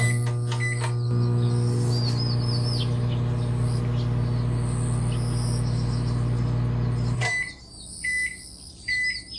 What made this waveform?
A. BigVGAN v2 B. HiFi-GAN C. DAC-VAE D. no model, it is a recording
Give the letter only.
D